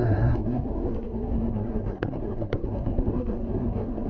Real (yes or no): no